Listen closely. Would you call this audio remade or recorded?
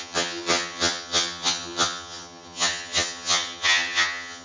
remade